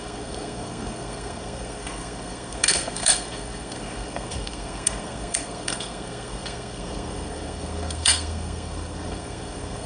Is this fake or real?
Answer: fake